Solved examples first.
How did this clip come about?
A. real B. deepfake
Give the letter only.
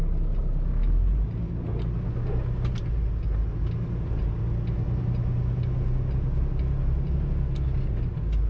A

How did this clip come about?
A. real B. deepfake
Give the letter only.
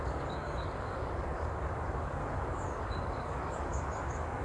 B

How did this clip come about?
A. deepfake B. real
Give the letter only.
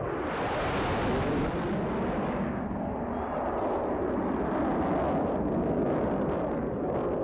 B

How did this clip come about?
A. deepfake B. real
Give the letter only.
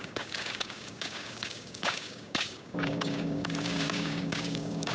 A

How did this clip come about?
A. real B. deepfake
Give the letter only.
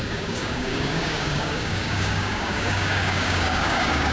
B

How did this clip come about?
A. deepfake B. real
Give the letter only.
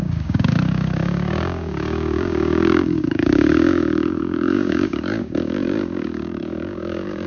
A